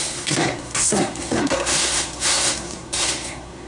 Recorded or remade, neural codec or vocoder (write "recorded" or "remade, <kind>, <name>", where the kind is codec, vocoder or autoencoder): remade, codec, SNAC